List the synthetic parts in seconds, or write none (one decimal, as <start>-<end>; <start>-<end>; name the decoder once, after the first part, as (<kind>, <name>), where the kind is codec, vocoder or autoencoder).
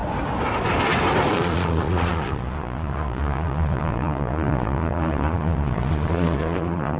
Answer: 1.3-7.0 (vocoder, Vocos)